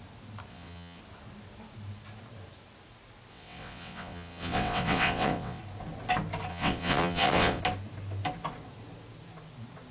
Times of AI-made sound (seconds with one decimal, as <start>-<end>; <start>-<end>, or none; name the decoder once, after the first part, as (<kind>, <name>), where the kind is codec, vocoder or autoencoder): 0.5-1.0 (vocoder, WaveNeXt); 3.3-5.6; 6.5-7.6